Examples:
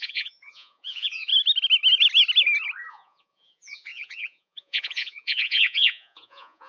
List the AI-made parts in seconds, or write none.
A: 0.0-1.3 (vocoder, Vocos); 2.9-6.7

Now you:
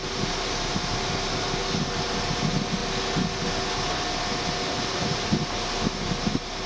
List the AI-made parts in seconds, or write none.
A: none

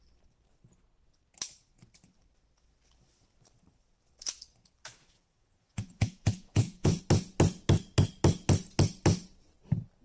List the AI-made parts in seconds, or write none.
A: 5.0-7.0 (vocoder, Vocos)